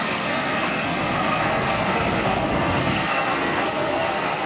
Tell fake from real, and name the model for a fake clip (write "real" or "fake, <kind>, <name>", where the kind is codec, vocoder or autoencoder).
fake, codec, SNAC